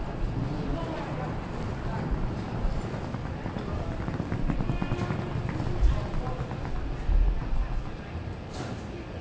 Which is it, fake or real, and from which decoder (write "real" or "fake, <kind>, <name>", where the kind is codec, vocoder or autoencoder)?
real